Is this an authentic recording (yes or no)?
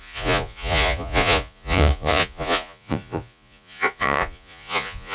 no